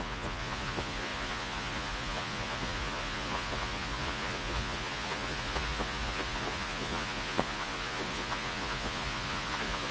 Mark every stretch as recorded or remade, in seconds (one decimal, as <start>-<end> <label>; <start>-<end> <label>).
0.0-9.9 remade